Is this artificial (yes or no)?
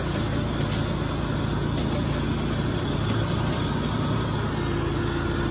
no